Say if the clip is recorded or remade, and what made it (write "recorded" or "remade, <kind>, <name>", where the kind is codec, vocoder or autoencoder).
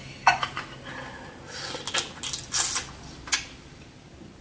recorded